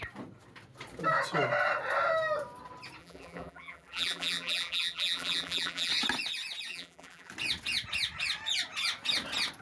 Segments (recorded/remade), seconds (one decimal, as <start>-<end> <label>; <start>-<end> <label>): 0.0-3.0 recorded; 3.0-5.9 remade; 5.9-6.7 recorded; 6.7-7.3 remade; 7.3-9.6 recorded